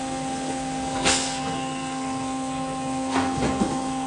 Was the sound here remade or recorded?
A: remade